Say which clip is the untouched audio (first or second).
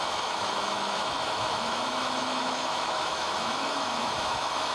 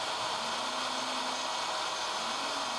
second